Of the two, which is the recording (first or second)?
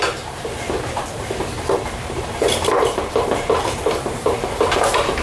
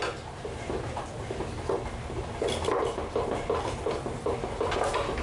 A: second